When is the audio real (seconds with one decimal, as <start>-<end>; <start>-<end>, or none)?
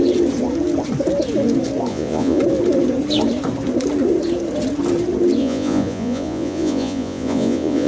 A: 0.0-1.9; 2.4-5.4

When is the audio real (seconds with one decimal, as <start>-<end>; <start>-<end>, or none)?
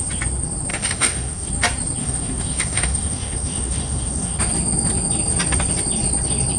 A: 0.0-0.7; 1.5-2.0; 4.4-6.6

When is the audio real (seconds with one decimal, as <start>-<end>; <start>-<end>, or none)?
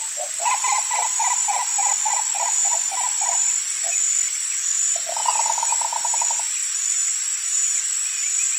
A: 0.0-8.6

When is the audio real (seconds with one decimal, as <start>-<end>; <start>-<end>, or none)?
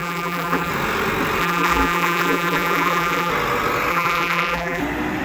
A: 0.7-1.4; 3.3-3.9; 4.8-5.2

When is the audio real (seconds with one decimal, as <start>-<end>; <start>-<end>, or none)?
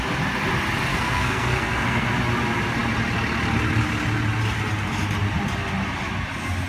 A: 0.0-0.9; 2.1-6.7